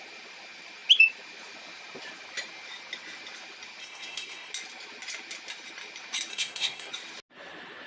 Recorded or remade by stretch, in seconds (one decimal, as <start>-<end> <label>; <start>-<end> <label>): 0.0-3.8 recorded; 3.8-4.5 remade; 4.5-6.3 recorded; 6.3-6.9 remade; 6.9-7.9 recorded